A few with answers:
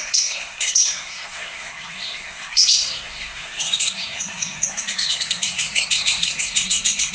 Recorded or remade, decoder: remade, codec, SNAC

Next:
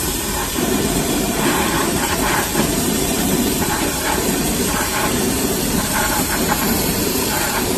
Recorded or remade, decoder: remade, vocoder, BigVGAN v2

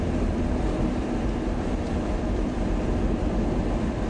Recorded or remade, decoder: recorded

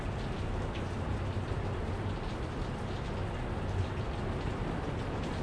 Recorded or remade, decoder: recorded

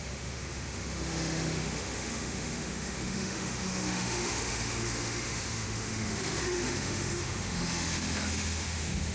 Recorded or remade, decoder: remade, autoencoder, DAC-VAE